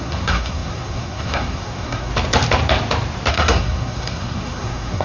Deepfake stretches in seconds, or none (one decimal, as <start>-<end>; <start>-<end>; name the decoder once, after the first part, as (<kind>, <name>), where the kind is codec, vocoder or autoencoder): 0.0-2.1 (codec, SNAC); 3.3-5.0